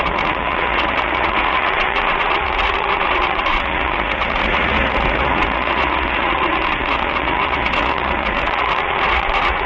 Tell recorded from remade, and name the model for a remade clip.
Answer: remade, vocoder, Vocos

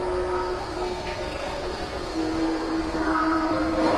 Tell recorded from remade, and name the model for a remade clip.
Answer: remade, codec, SNAC